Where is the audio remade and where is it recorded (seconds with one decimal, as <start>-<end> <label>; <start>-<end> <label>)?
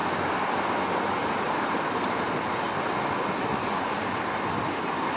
0.0-3.5 recorded; 3.5-4.2 remade; 4.2-5.2 recorded